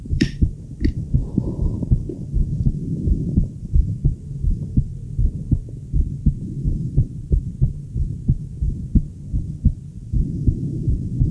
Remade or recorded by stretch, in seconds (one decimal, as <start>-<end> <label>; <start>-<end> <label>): 0.0-4.9 remade; 4.9-9.4 recorded; 9.4-11.3 remade